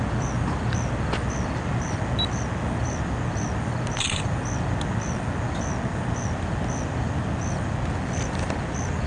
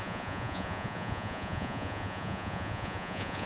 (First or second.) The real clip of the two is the first